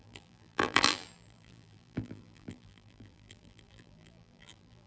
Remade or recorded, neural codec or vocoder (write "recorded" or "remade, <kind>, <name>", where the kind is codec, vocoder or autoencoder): remade, vocoder, BigVGAN v2